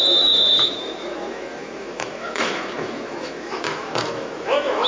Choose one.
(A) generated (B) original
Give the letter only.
A